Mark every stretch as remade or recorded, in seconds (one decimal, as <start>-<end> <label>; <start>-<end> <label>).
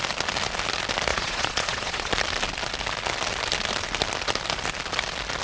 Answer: 0.0-1.1 recorded; 1.1-2.1 remade; 2.1-5.4 recorded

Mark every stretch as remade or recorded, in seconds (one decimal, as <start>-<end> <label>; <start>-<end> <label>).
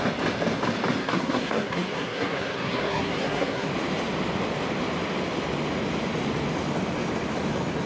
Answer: 0.0-1.0 recorded; 1.0-3.7 remade; 3.7-7.9 recorded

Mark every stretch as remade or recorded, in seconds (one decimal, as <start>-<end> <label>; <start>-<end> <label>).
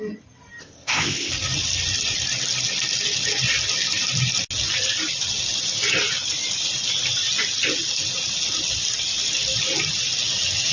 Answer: 0.0-0.6 recorded; 0.6-1.3 remade; 1.3-10.7 recorded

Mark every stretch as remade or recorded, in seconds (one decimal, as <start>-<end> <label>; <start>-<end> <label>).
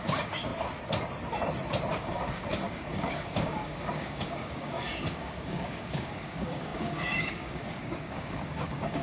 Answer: 0.0-0.5 remade; 0.5-1.9 recorded; 1.9-9.0 remade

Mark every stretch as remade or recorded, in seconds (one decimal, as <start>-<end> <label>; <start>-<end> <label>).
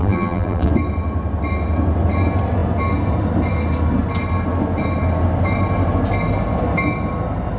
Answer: 0.0-0.7 remade; 0.7-7.6 recorded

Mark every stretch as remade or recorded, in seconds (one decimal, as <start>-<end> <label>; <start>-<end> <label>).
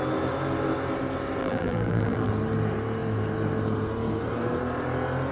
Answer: 0.0-1.4 recorded; 1.4-2.3 remade; 2.3-5.3 recorded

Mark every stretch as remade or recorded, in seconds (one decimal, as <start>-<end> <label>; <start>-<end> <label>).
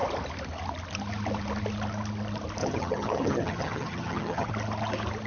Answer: 0.0-2.6 recorded; 2.6-4.5 remade; 4.5-5.3 recorded